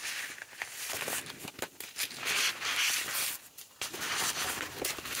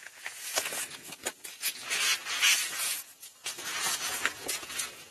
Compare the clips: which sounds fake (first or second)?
second